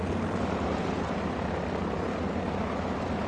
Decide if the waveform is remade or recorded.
recorded